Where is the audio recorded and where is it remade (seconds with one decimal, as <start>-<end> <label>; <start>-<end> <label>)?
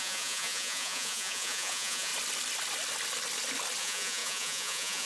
0.0-2.1 remade; 2.1-3.8 recorded; 3.8-5.1 remade